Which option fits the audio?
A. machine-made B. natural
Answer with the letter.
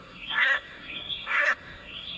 A